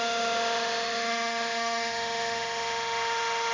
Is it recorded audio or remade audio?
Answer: remade